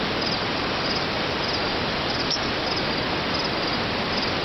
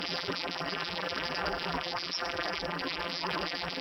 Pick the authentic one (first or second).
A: first